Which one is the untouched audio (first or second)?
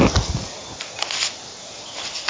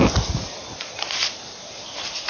first